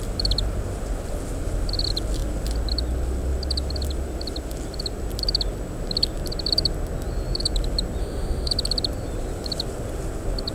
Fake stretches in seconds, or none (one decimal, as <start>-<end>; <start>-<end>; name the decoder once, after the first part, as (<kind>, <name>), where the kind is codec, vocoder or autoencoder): 8.0-8.5 (autoencoder, DAC-VAE)